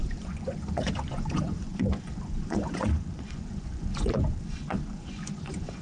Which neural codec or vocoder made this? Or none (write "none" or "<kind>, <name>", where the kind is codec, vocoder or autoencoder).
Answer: vocoder, Vocos